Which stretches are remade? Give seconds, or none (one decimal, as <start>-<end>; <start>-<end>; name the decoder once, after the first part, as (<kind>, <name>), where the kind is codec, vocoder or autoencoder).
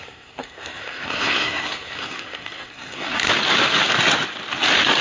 0.0-3.2 (codec, SNAC)